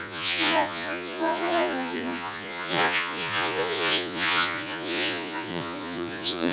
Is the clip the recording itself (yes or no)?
no